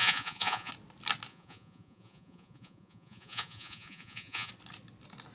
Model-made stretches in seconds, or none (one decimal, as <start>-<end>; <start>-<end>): 0.0-0.7; 1.3-4.5